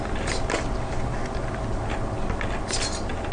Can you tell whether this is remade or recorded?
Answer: recorded